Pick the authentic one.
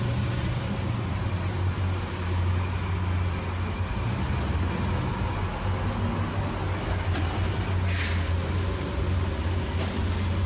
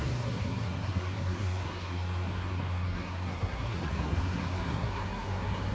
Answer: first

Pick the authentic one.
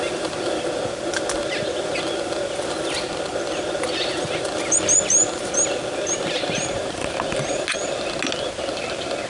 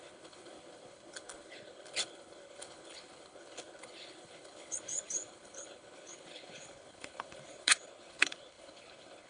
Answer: first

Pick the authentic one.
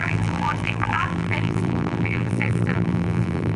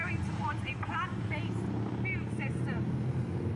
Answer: second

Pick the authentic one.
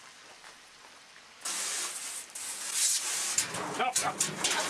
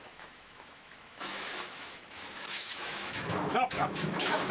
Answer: first